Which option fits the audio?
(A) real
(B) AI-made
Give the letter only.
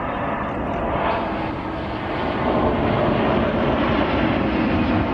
A